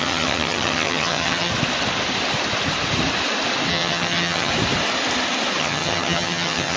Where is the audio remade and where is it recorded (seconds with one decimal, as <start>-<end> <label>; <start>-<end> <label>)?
0.0-1.5 remade; 1.5-3.7 recorded; 3.7-4.5 remade; 4.5-5.6 recorded; 5.6-6.8 remade